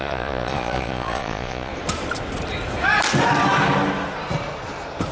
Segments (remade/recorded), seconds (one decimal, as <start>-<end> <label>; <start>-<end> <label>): 0.0-1.7 remade; 1.7-5.1 recorded

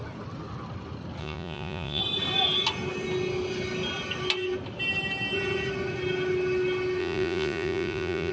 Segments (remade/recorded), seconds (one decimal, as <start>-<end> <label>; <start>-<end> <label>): 0.0-1.2 recorded; 1.2-2.0 remade; 2.0-7.0 recorded; 7.0-8.3 remade

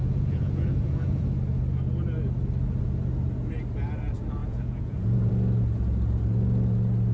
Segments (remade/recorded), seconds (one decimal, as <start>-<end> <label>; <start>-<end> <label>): 0.0-1.2 remade; 1.2-4.4 recorded; 4.4-5.3 remade; 5.3-7.1 recorded

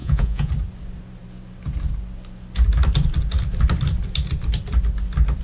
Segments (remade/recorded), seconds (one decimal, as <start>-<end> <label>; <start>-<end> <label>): 0.0-0.5 remade; 0.5-5.4 recorded